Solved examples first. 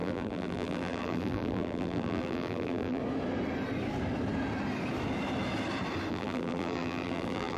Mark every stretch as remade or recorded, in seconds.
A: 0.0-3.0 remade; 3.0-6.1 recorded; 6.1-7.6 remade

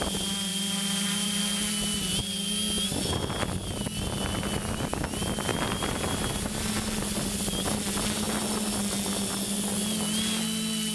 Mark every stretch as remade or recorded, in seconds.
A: 0.0-0.5 recorded; 0.5-1.4 remade; 1.4-10.9 recorded

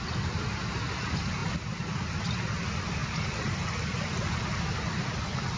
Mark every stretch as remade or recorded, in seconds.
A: 0.0-5.6 recorded